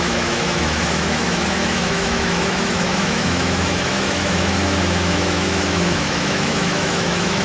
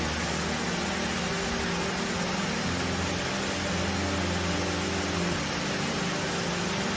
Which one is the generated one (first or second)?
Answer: first